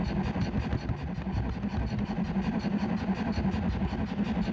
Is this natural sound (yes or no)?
yes